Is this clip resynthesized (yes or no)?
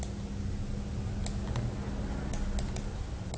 no